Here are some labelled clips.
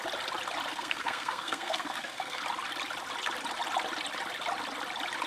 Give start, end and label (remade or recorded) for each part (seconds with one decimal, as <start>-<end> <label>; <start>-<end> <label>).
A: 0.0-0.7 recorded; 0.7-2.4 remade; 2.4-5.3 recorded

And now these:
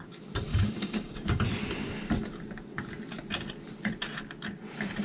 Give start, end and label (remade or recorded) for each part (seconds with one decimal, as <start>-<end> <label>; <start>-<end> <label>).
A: 0.0-0.5 recorded; 0.5-1.4 remade; 1.4-5.0 recorded

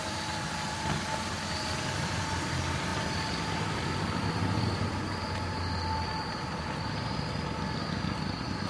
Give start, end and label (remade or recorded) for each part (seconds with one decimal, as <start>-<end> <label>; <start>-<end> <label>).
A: 0.0-8.7 recorded

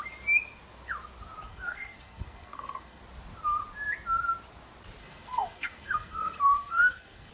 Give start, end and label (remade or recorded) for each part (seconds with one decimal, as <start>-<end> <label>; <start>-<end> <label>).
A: 0.0-1.5 recorded; 1.5-3.0 remade; 3.0-5.0 recorded; 5.0-7.3 remade